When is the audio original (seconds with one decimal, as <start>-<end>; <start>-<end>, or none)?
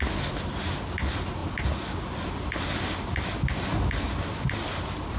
0.0-5.2